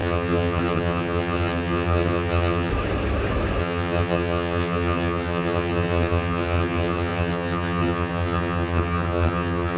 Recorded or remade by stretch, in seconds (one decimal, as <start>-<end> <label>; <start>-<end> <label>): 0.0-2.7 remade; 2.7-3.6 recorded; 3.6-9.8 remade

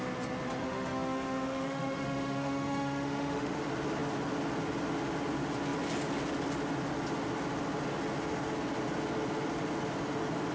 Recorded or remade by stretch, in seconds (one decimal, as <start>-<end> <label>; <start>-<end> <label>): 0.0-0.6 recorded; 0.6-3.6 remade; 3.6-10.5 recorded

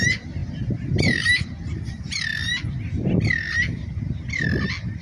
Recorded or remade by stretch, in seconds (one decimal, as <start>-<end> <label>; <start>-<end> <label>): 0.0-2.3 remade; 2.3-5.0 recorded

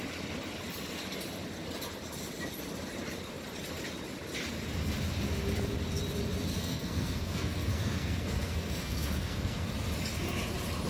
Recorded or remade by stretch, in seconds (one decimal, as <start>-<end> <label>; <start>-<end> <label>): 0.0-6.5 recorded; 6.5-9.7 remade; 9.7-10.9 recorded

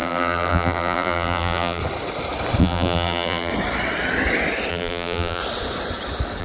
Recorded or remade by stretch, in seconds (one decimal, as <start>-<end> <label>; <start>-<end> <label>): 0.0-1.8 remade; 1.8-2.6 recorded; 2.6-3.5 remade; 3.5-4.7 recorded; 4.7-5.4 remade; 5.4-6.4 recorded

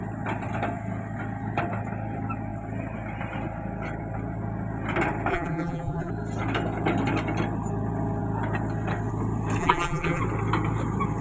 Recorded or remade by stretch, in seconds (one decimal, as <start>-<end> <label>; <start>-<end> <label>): 0.0-5.3 recorded; 5.3-6.1 remade; 6.1-9.6 recorded; 9.6-10.2 remade; 10.2-11.2 recorded